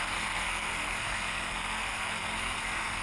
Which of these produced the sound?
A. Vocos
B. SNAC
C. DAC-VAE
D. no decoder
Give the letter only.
B